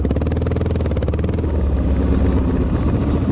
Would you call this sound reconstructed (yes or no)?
no